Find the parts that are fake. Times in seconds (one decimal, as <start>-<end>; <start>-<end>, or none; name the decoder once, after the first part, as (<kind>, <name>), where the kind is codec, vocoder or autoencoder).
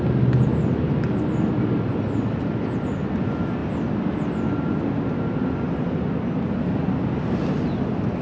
none